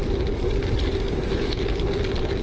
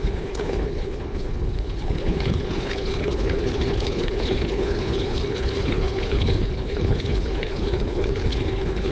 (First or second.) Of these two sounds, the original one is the first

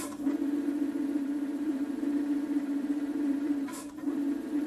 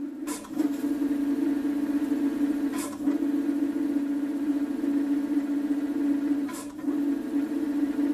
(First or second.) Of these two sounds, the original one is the second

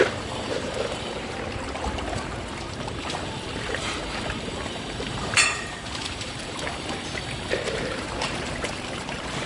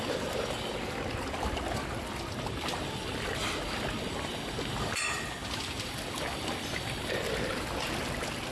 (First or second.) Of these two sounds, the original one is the second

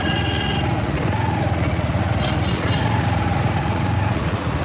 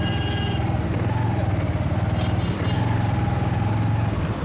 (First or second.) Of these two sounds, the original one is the second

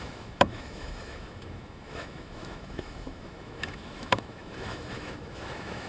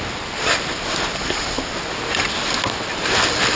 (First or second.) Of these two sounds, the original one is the second